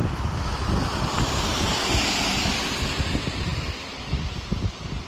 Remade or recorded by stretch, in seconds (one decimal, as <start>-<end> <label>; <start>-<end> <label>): 0.0-5.1 recorded